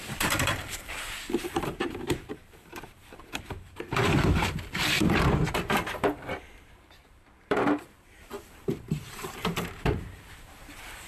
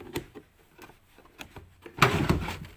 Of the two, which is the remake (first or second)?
first